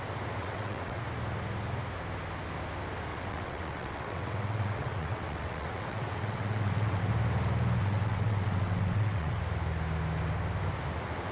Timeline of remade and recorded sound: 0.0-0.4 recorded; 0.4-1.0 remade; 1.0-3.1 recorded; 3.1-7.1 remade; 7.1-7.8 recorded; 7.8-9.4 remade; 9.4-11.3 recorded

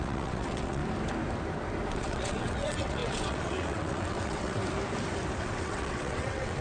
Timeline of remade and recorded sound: 0.0-0.8 remade; 0.8-1.9 recorded; 1.9-4.6 remade; 4.6-5.4 recorded; 5.4-6.6 remade

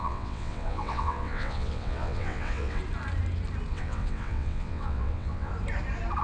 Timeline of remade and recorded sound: 0.0-2.8 remade; 2.8-3.7 recorded; 3.7-5.5 remade; 5.5-6.2 recorded